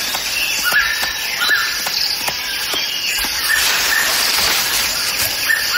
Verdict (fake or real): fake